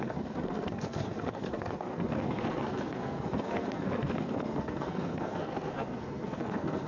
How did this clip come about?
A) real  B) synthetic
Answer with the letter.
B